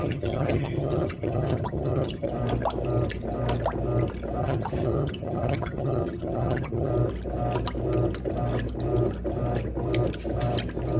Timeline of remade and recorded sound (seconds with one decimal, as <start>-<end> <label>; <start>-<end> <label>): 0.0-2.3 remade; 2.3-4.4 recorded; 4.4-6.9 remade; 6.9-11.0 recorded